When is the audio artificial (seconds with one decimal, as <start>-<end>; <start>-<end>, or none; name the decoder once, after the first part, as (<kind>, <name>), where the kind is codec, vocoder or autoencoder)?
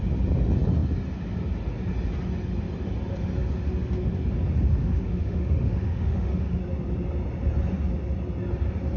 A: 4.8-6.6 (autoencoder, DAC-VAE)